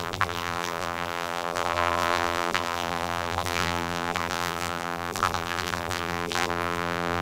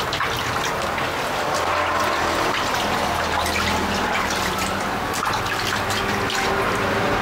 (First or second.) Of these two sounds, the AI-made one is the first